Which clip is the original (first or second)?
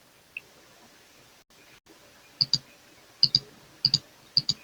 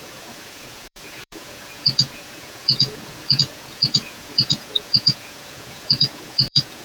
first